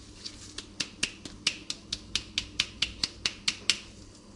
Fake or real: real